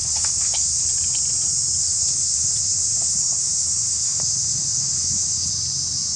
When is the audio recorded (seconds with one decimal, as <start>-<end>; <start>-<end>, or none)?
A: 0.9-1.8; 5.5-6.2